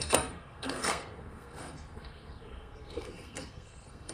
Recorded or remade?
remade